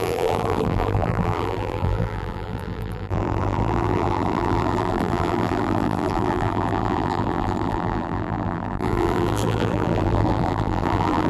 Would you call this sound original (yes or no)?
no